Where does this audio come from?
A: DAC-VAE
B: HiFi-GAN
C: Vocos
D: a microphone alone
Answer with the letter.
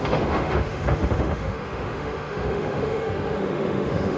A